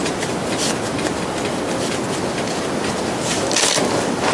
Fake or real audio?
real